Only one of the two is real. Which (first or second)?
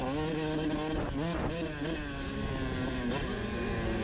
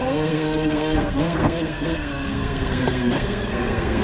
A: first